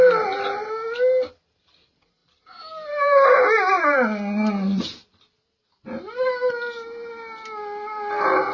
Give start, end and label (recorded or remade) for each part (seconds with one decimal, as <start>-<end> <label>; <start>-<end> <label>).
0.0-8.5 recorded